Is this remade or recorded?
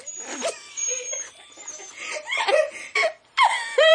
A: remade